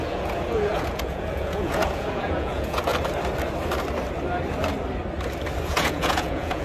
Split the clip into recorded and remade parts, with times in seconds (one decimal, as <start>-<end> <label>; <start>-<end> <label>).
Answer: 0.0-2.9 remade; 2.9-5.6 recorded; 5.6-6.6 remade